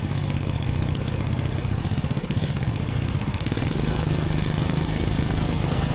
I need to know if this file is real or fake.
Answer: fake